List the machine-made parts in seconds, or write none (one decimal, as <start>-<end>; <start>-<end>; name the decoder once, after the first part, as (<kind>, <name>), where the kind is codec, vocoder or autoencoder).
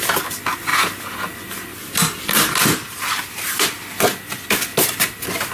none